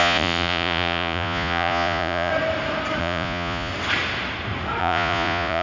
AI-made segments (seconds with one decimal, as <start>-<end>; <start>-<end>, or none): 0.0-2.3; 3.0-3.7; 4.8-5.6